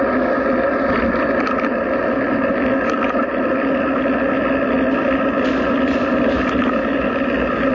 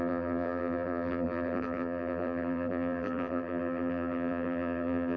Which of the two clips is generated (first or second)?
second